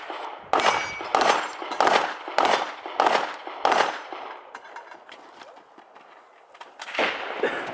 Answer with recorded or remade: recorded